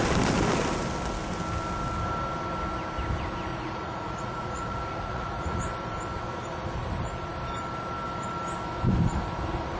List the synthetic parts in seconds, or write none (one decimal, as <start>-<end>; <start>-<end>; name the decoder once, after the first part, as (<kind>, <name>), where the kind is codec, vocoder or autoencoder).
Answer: 3.5-5.6 (vocoder, Vocos)